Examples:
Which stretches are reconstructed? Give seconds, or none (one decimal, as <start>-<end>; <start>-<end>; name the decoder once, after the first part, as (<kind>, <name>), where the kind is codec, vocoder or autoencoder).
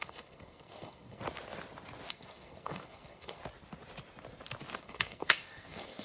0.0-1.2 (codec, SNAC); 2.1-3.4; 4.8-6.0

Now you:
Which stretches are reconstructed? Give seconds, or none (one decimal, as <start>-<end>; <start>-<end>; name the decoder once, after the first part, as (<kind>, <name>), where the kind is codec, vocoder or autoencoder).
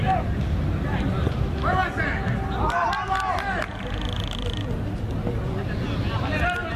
none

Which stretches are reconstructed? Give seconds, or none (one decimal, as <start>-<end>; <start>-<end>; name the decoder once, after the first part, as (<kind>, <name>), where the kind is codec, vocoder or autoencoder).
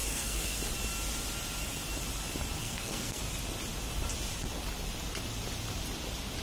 0.0-0.6 (codec, SNAC); 2.6-3.2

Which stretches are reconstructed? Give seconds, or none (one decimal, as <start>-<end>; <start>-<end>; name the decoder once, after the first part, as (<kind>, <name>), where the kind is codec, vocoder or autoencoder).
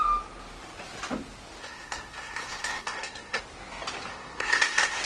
1.6-3.4 (codec, SNAC); 4.1-5.0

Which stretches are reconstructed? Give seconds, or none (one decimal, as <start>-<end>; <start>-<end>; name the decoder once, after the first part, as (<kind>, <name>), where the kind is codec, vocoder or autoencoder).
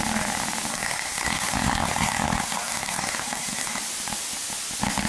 0.7-3.8 (codec, SNAC)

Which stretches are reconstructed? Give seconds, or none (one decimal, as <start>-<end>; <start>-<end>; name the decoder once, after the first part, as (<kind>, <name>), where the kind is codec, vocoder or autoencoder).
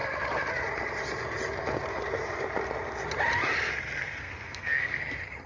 4.0-5.0 (codec, SNAC)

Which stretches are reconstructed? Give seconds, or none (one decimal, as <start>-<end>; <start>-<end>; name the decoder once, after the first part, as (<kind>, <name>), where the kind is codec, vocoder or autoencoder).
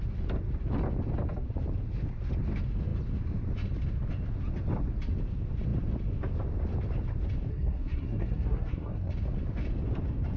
7.5-9.1 (codec, SNAC)